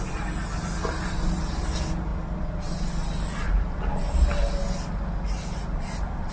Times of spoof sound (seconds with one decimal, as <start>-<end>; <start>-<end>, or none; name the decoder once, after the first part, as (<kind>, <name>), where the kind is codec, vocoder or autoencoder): none